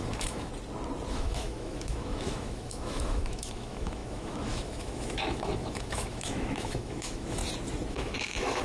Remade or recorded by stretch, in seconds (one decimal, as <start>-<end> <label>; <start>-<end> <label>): 0.0-0.5 remade; 0.5-1.1 recorded; 1.1-7.4 remade; 7.4-7.9 recorded; 7.9-8.6 remade